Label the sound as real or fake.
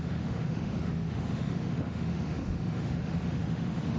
fake